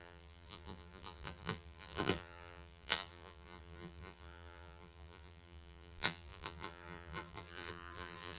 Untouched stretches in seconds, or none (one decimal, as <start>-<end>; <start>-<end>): none